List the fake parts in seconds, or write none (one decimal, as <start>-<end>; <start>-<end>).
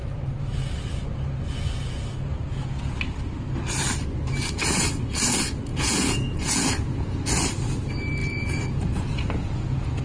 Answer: 5.7-7.3; 8.2-10.0